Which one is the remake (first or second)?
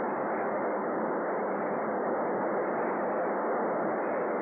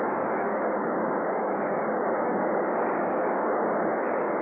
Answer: second